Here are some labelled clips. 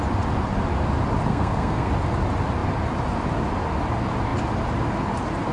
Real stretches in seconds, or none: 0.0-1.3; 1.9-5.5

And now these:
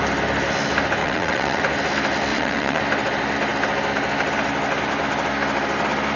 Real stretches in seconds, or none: 0.0-1.0; 1.6-2.3; 2.8-6.2

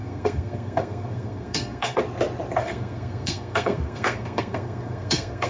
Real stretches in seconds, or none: 2.0-2.6

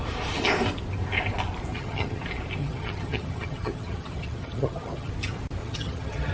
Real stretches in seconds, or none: 0.0-1.7; 2.2-2.6; 5.1-5.6

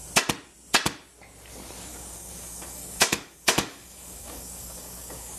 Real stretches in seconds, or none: 0.0-1.9

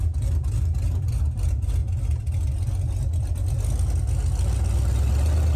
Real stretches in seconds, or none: 1.8-5.6

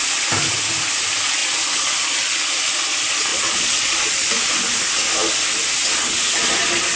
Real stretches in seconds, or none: 0.0-3.3; 4.3-7.0